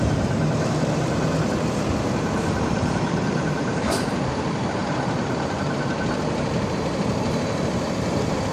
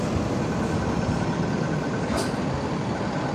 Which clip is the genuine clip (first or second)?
second